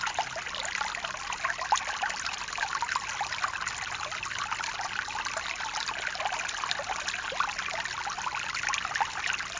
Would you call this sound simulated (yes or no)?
no